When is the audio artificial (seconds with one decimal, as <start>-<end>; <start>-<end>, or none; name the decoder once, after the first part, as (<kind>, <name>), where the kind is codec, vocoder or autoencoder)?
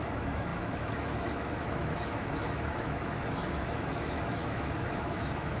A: 0.0-5.6 (autoencoder, DAC-VAE)